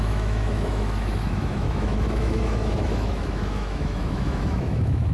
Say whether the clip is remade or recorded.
remade